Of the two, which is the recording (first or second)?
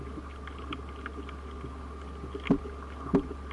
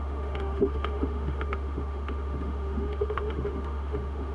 first